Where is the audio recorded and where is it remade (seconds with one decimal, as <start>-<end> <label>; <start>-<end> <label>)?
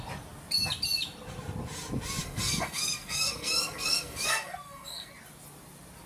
0.0-2.2 recorded; 2.2-5.1 remade; 5.1-6.1 recorded